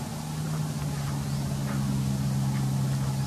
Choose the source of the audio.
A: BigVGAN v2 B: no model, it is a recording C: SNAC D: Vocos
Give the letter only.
B